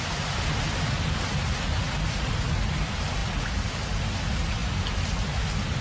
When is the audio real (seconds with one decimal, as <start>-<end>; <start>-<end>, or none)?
0.0-5.8